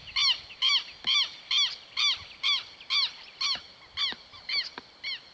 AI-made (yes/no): no